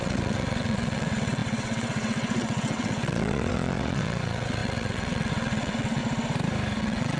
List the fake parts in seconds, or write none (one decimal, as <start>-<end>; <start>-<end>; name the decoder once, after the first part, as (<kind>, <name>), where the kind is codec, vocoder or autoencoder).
0.0-6.0 (vocoder, WaveNeXt); 6.8-7.2